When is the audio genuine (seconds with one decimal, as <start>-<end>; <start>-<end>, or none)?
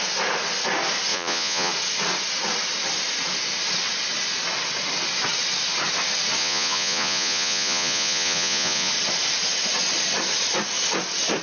0.0-1.1; 1.7-6.4; 8.9-11.4